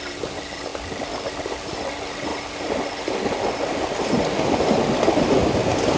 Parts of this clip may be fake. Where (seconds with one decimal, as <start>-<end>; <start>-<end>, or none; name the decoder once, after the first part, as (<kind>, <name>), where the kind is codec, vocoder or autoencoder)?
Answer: none